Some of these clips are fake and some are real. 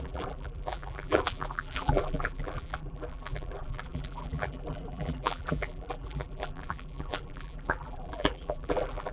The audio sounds fake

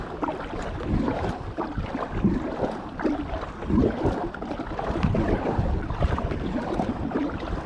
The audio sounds real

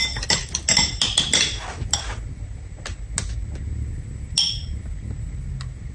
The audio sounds real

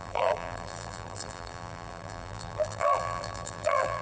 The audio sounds fake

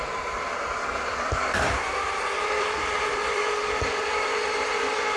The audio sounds fake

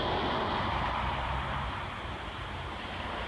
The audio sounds fake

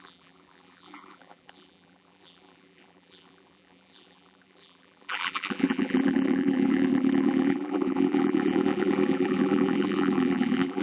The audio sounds fake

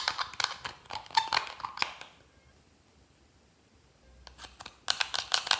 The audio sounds real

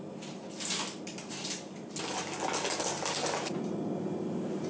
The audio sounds real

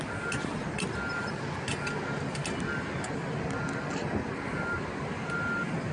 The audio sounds real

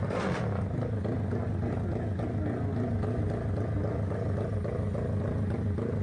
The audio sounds real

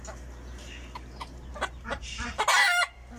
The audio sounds real